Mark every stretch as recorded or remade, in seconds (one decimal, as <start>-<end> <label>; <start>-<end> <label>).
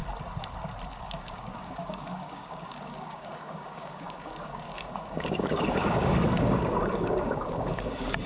0.0-1.0 recorded; 1.0-8.3 remade